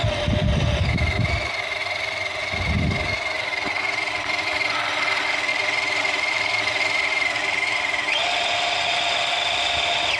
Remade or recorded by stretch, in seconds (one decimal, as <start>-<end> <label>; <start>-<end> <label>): 0.0-5.5 recorded; 5.5-9.6 remade; 9.6-10.2 recorded